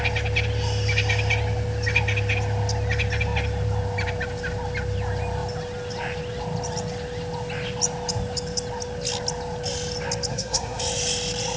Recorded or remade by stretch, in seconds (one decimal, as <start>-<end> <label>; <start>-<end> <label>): 0.0-10.3 recorded; 10.3-10.8 remade; 10.8-11.6 recorded